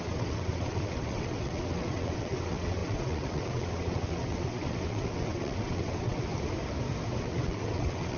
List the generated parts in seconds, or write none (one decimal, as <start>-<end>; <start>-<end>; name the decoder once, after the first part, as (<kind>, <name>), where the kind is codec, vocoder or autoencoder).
0.0-6.3 (vocoder, WaveNeXt); 7.2-8.2